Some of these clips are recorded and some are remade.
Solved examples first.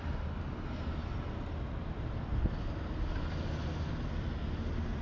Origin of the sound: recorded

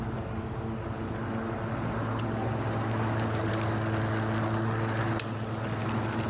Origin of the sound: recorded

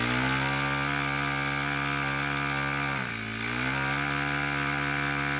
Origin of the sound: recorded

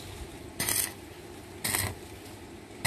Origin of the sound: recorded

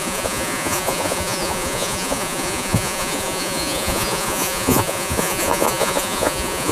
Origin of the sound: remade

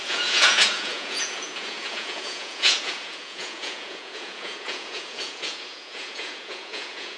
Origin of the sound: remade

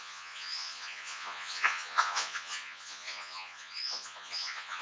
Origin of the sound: remade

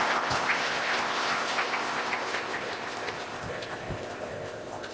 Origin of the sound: remade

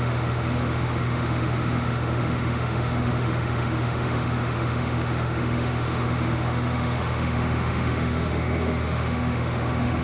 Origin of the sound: remade